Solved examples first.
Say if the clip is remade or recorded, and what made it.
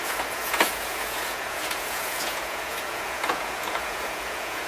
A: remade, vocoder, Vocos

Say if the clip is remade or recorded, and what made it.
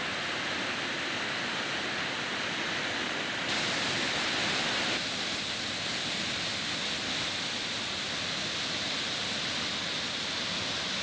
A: recorded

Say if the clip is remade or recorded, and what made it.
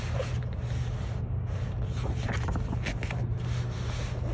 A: recorded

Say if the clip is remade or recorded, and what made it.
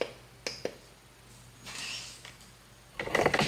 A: recorded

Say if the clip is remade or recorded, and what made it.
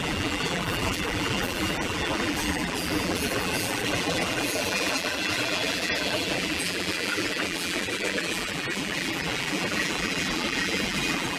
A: remade, vocoder, BigVGAN v2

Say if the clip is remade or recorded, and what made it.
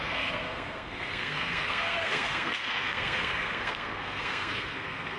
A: remade, codec, SNAC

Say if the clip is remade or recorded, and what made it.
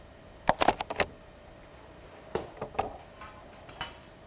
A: recorded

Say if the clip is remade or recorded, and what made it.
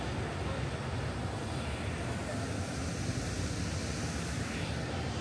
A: recorded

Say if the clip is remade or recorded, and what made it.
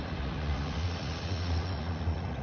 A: remade, vocoder, Vocos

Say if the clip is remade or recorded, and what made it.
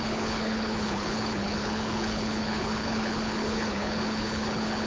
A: remade, codec, HILCodec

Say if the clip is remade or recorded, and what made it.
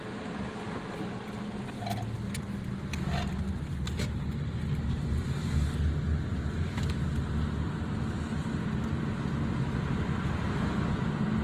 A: recorded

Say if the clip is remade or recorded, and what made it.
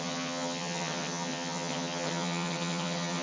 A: remade, vocoder, HiFi-GAN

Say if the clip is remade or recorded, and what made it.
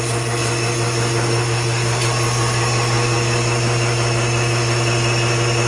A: recorded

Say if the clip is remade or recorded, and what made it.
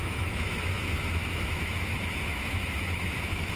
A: remade, autoencoder, DAC-VAE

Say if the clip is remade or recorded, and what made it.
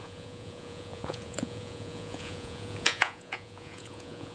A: remade, vocoder, Vocos